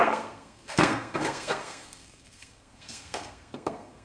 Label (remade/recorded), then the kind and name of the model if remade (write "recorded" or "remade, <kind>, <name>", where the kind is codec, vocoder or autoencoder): remade, codec, SNAC